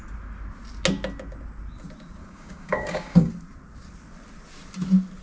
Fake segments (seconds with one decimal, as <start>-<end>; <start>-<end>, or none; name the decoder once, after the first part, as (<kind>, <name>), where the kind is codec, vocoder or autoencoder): 2.2-3.3 (codec, DAC)